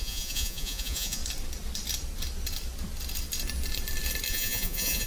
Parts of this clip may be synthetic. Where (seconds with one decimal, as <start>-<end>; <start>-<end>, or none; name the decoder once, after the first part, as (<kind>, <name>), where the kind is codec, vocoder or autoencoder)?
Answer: 0.0-1.2 (vocoder, Vocos); 4.3-5.1